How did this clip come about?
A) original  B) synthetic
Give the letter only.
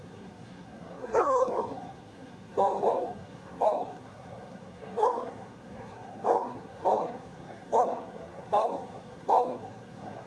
B